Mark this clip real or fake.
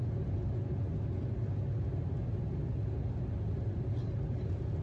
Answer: real